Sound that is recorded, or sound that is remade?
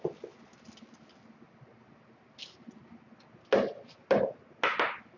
recorded